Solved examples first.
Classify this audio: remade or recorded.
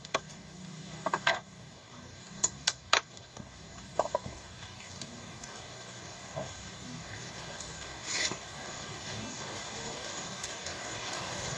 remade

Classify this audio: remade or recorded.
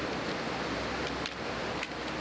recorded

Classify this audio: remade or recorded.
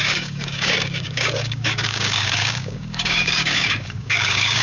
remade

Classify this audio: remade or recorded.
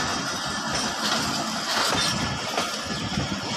recorded